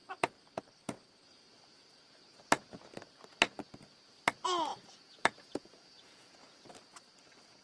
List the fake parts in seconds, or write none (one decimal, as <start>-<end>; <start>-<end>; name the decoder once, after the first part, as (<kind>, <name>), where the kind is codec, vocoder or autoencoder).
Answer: 4.7-6.6 (vocoder, Vocos)